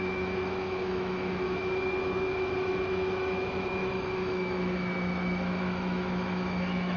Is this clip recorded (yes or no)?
no